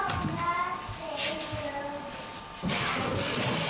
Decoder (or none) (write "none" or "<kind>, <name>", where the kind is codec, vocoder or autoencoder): none